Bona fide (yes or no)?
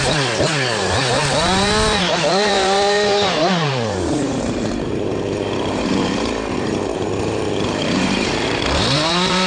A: no